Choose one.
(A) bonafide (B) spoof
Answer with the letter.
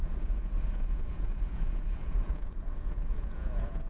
B